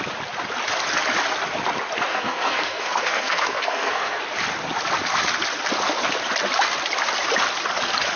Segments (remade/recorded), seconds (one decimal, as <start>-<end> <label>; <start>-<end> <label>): 0.0-2.1 recorded; 2.1-4.2 remade; 4.2-8.2 recorded